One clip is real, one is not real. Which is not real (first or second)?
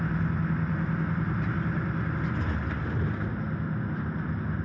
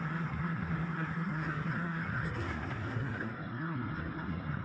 second